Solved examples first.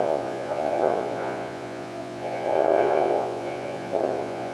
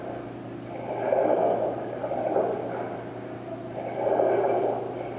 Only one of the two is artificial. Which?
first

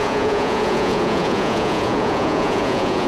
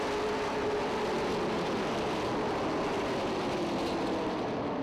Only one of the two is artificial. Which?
first